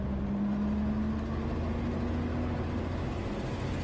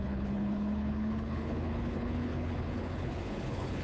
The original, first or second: first